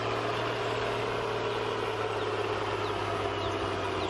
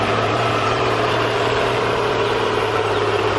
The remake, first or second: second